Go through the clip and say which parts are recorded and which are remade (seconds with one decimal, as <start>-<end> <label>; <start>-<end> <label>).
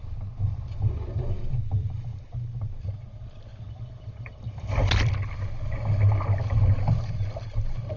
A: 0.0-8.0 recorded